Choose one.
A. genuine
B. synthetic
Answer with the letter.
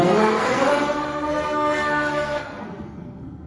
B